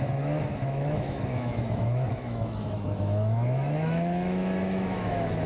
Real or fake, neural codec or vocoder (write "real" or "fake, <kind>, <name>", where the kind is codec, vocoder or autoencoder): fake, autoencoder, DAC-VAE